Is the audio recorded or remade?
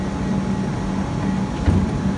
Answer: recorded